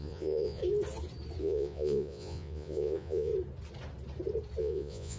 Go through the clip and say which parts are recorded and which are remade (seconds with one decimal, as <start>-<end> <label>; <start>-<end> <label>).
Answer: 0.0-0.6 remade; 0.6-1.4 recorded; 1.4-3.3 remade; 3.3-4.6 recorded; 4.6-5.2 remade